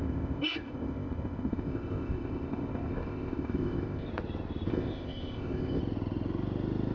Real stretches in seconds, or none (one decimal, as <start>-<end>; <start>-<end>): 4.1-4.7; 5.8-6.9